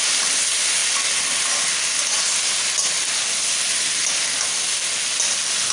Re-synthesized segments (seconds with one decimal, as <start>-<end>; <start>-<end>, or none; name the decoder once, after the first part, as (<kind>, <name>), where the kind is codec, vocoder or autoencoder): none